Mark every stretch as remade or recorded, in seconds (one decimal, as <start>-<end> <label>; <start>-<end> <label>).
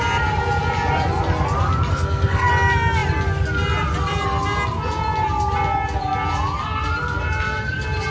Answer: 0.0-1.9 recorded; 1.9-2.5 remade; 2.5-8.1 recorded